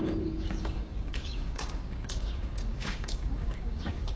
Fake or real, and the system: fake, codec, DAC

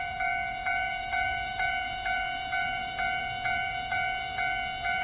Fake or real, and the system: fake, vocoder, BigVGAN v2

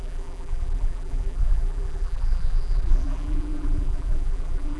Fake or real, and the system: fake, vocoder, BigVGAN v2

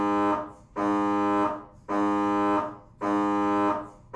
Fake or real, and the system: real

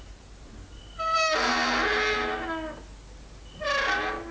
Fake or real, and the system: real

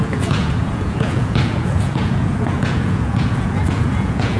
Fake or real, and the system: fake, vocoder, Vocos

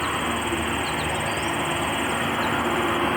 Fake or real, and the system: real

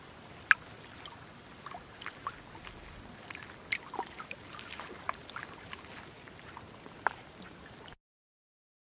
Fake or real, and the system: real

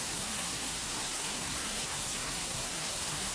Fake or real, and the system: fake, codec, SNAC